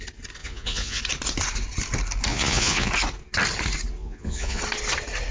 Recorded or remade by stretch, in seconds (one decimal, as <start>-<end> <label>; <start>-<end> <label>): 0.0-0.4 recorded; 0.4-1.0 remade; 1.0-2.3 recorded; 2.3-2.9 remade; 2.9-4.0 recorded; 4.0-4.6 remade; 4.6-5.3 recorded